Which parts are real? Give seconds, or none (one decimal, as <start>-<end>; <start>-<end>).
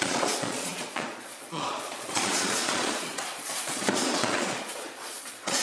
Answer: none